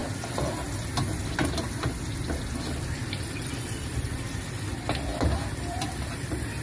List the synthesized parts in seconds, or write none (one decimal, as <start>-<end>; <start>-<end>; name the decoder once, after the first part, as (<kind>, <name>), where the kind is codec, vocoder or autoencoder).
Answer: 3.0-4.1 (vocoder, BigVGAN v2); 5.1-6.1